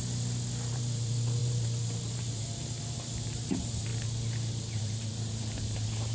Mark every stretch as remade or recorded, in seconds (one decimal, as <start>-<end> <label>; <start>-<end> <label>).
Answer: 0.0-0.7 recorded; 0.7-3.9 remade; 3.9-4.8 recorded; 4.8-6.1 remade